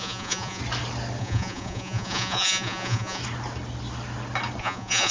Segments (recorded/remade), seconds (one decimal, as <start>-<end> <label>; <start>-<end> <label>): 0.0-0.6 remade; 0.6-1.2 recorded; 1.2-3.2 remade; 3.2-4.6 recorded; 4.6-5.1 remade